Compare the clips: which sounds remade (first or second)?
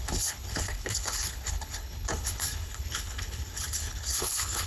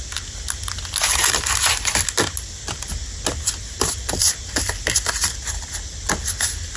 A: first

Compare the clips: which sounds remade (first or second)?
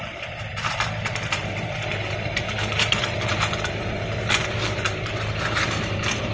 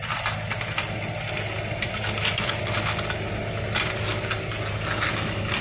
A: first